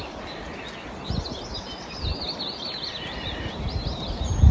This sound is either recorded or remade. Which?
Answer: recorded